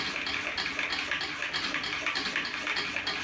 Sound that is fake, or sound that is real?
real